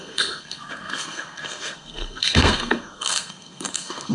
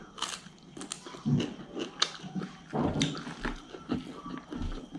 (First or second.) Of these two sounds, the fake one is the first